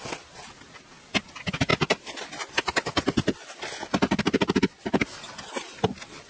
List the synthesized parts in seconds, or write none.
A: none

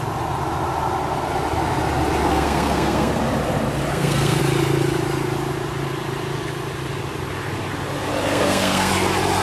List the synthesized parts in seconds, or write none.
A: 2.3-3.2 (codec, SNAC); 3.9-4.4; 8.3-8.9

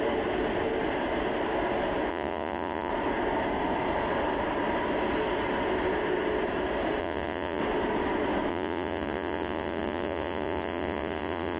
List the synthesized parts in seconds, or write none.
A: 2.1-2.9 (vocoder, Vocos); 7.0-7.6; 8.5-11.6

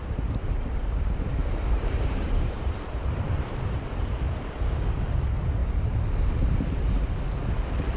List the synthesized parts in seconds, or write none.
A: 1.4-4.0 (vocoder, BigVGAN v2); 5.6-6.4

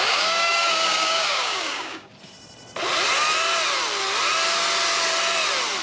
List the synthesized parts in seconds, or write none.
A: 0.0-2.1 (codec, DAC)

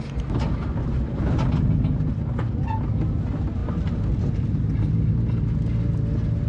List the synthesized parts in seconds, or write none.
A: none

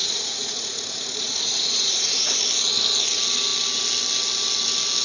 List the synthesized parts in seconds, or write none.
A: 0.0-2.4 (vocoder, Vocos)

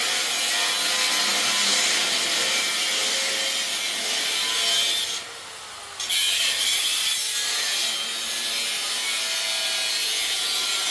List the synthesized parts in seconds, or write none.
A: none